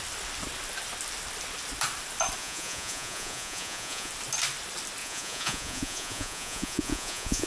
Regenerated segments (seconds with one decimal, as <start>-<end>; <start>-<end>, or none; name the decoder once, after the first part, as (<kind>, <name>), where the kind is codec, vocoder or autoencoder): 2.4-4.1 (vocoder, Vocos); 5.0-7.5